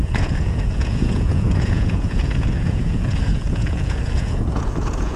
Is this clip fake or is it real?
fake